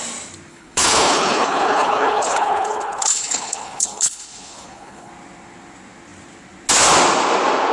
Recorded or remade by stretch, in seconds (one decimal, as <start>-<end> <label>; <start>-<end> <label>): 0.0-0.5 recorded; 0.5-5.1 remade; 5.1-7.7 recorded